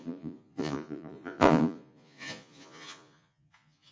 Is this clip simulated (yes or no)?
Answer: yes